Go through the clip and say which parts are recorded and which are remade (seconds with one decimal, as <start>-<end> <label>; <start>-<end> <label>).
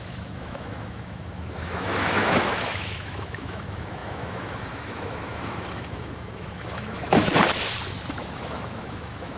0.0-7.3 remade; 7.3-8.2 recorded; 8.2-9.4 remade